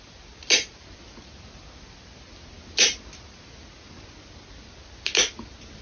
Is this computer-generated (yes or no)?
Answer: no